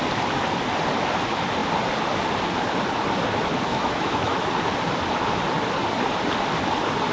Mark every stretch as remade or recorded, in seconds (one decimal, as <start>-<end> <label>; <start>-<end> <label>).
0.0-3.7 recorded; 3.7-4.5 remade; 4.5-7.1 recorded

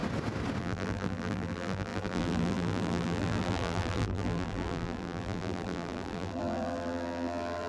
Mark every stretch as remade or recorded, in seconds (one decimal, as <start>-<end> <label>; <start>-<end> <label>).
0.0-0.6 recorded; 0.6-7.7 remade

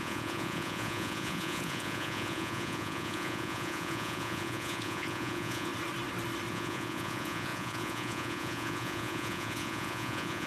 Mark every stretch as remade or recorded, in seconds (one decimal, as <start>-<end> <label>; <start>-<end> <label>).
0.0-5.7 remade; 5.7-6.5 recorded; 6.5-10.5 remade

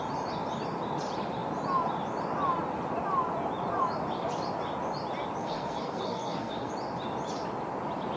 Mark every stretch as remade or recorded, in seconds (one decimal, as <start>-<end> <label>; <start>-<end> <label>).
0.0-5.4 recorded; 5.4-6.7 remade; 6.7-8.2 recorded

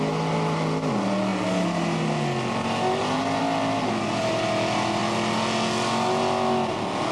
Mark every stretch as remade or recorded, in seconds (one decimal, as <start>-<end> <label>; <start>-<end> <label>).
0.0-7.1 recorded

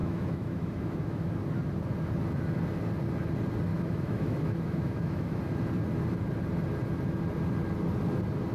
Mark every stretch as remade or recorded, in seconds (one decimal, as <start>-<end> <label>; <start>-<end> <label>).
0.0-1.3 remade; 1.3-3.7 recorded; 3.7-5.4 remade; 5.4-8.5 recorded

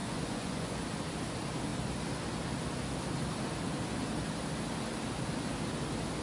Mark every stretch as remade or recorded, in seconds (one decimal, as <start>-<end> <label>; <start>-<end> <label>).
0.0-0.8 remade; 0.8-6.2 recorded

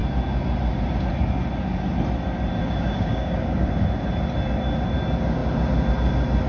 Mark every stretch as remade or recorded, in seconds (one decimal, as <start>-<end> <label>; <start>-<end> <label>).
0.0-2.6 recorded; 2.6-3.7 remade; 3.7-6.5 recorded